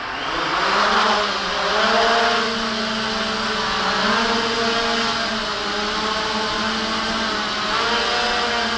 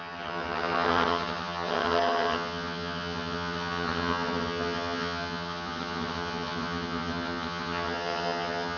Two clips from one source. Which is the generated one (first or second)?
second